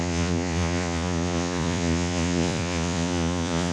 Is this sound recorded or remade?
remade